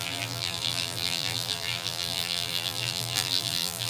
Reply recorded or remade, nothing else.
remade